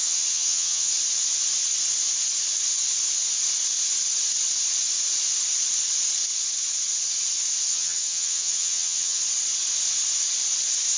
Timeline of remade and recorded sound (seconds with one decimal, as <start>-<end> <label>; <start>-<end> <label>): 0.0-0.9 remade; 0.9-7.7 recorded; 7.7-9.2 remade; 9.2-11.0 recorded

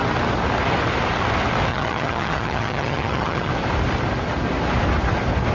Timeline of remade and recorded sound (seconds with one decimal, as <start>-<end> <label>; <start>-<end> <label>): 0.0-1.7 recorded; 1.7-3.5 remade; 3.5-5.5 recorded

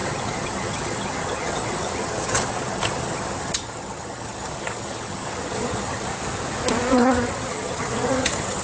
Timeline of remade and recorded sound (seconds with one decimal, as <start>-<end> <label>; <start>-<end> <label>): 0.0-6.1 remade; 6.1-6.9 recorded; 6.9-8.6 remade

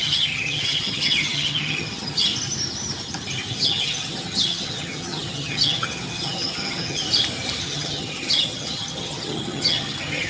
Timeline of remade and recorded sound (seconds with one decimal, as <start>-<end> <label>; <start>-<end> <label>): 0.0-2.3 remade; 2.3-3.5 recorded; 3.5-7.0 remade; 7.0-7.6 recorded; 7.6-10.3 remade

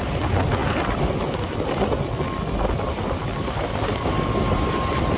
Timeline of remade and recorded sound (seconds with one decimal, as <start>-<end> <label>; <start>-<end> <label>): 0.0-5.2 recorded